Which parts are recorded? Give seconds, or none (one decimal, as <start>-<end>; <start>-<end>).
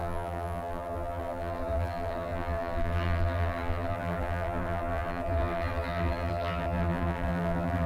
none